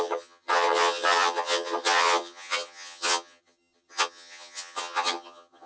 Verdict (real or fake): fake